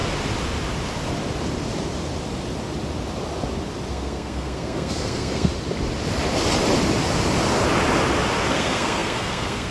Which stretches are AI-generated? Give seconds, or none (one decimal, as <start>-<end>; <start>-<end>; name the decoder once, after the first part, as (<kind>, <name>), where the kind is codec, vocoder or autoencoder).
3.9-5.5 (codec, SNAC); 8.5-9.7